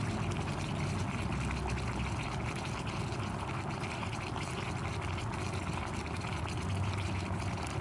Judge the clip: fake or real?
real